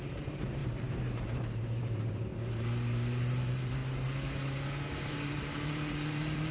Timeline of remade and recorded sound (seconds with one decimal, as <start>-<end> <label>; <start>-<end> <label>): 0.0-2.3 remade; 2.3-3.3 recorded; 3.3-3.8 remade; 3.8-5.1 recorded; 5.1-6.5 remade